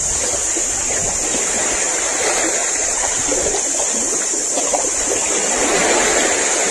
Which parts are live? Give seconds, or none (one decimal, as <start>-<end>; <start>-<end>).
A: 0.0-2.6; 5.6-6.7